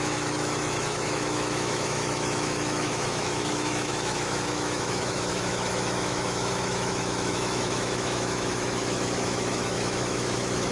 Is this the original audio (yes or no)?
no